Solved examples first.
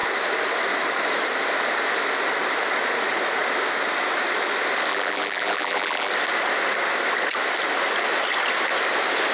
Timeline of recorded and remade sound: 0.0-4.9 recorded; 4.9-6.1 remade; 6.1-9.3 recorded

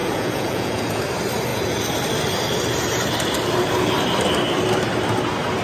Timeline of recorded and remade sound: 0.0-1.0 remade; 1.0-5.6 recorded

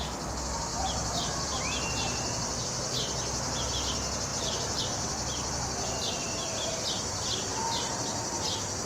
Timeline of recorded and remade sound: 0.0-0.7 recorded; 0.7-2.6 remade; 2.6-4.3 recorded; 4.3-4.8 remade; 4.8-8.9 recorded

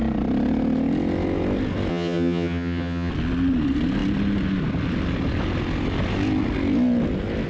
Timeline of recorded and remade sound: 0.0-1.9 recorded; 1.9-3.1 remade; 3.1-7.5 recorded